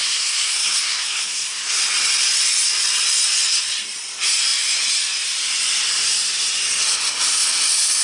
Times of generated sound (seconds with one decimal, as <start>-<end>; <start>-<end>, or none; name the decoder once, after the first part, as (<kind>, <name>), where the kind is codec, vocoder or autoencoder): 0.0-1.8 (codec, SNAC)